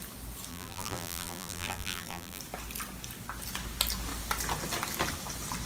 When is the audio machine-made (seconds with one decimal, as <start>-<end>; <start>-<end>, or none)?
0.5-2.4